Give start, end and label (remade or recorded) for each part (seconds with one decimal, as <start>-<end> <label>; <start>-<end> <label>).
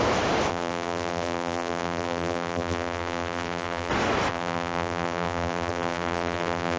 0.0-0.5 recorded; 0.5-3.9 remade; 3.9-4.3 recorded; 4.3-6.8 remade